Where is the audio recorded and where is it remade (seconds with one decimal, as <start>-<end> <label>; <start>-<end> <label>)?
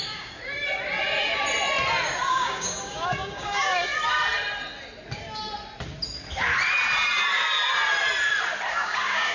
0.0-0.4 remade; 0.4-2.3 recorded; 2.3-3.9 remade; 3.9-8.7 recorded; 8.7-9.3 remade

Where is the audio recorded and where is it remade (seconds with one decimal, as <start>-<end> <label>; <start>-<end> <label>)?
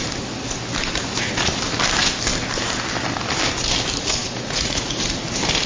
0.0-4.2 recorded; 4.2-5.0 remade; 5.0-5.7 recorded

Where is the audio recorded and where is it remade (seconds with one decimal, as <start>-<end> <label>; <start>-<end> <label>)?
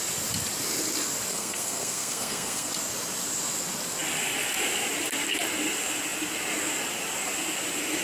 0.0-1.3 recorded; 1.3-2.7 remade; 2.7-8.0 recorded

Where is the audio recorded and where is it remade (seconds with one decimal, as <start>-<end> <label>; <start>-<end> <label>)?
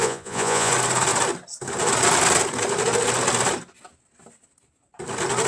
0.0-0.7 remade; 0.7-5.5 recorded